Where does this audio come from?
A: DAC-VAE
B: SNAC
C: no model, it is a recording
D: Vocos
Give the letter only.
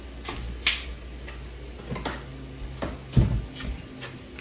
C